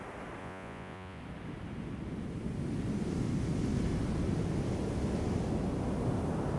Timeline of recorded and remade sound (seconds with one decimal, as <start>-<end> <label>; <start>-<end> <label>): 0.0-0.4 recorded; 0.4-1.2 remade; 1.2-6.6 recorded